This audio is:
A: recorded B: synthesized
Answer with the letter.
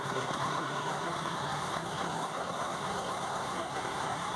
B